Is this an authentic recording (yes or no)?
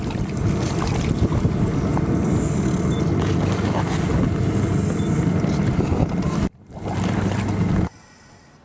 yes